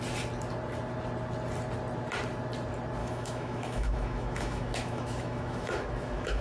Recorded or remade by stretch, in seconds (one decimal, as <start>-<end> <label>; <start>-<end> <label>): 0.0-3.0 recorded; 3.0-6.4 remade